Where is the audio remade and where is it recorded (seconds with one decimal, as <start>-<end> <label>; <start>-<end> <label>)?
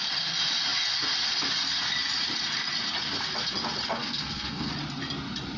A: 0.0-4.0 recorded; 4.0-4.7 remade; 4.7-5.6 recorded